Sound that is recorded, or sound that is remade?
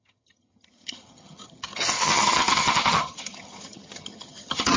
remade